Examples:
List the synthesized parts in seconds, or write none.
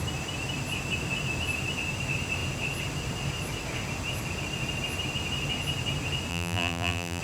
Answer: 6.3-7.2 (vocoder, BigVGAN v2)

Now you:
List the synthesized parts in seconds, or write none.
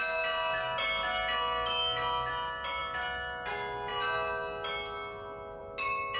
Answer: none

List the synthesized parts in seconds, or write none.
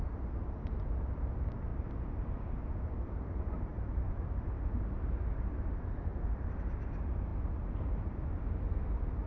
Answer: none